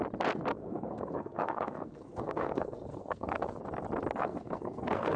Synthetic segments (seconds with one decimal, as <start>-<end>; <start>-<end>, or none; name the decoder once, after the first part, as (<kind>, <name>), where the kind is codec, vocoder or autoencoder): 0.5-3.6 (codec, SNAC); 4.2-5.2